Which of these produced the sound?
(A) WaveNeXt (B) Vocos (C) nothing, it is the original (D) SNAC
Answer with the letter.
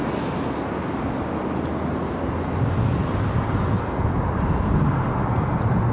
C